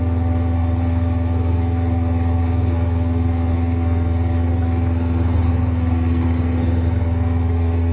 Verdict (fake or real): fake